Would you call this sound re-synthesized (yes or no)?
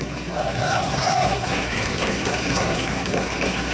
yes